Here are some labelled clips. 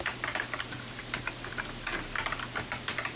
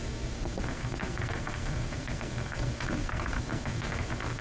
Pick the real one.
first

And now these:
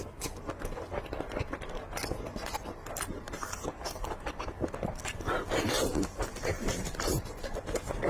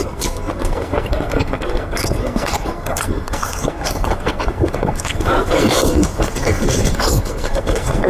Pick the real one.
first